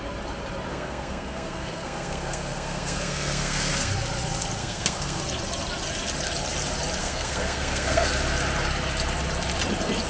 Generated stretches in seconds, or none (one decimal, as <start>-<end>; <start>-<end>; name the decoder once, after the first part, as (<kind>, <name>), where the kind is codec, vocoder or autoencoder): 0.7-3.9 (codec, SNAC); 4.6-5.2; 7.0-8.1